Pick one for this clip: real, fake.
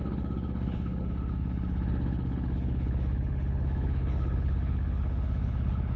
fake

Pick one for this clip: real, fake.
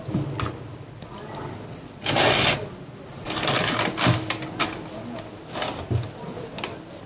real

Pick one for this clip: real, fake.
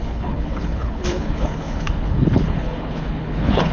fake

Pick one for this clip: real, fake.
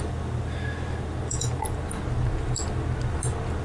real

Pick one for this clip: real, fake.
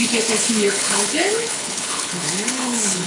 fake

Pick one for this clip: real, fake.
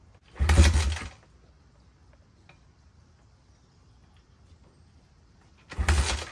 real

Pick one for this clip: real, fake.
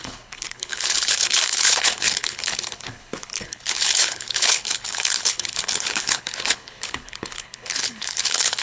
fake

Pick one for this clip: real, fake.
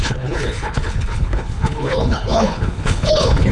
fake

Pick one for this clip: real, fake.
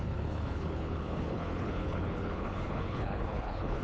fake